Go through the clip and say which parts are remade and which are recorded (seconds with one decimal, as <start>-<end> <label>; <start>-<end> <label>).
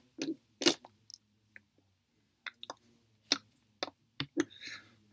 0.0-5.1 recorded